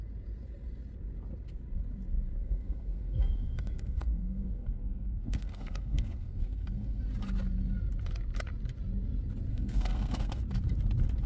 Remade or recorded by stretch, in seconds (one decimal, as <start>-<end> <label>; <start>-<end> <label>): 0.0-2.4 recorded; 2.4-7.0 remade; 7.0-9.5 recorded; 9.5-10.4 remade; 10.4-11.3 recorded